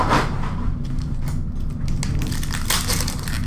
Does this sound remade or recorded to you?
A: recorded